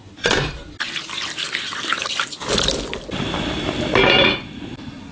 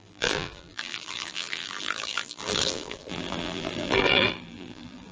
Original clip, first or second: first